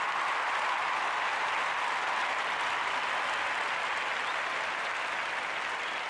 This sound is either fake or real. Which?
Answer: real